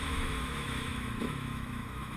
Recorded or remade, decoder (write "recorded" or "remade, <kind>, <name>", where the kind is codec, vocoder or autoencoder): remade, autoencoder, DAC-VAE